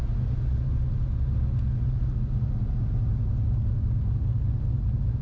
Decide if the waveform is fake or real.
real